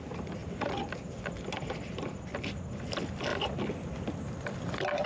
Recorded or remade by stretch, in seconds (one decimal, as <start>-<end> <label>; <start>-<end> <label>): 0.0-5.1 recorded